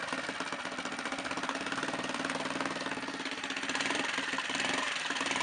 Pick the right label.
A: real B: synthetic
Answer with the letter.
B